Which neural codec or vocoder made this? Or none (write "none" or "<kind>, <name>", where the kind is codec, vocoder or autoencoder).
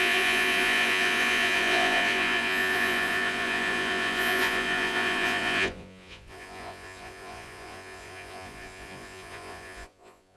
vocoder, Vocos